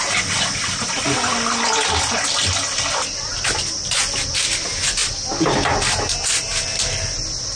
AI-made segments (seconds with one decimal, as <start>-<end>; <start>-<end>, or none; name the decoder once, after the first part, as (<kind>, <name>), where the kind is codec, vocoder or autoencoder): none